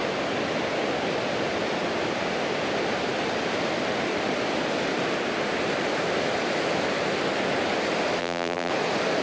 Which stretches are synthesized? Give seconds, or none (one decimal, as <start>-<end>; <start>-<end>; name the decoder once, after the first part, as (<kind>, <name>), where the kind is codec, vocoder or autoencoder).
8.2-8.7 (vocoder, BigVGAN v2)